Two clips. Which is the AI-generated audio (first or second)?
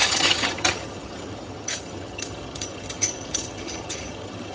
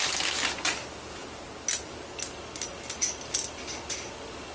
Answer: first